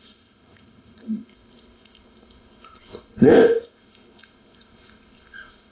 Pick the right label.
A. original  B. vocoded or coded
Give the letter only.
B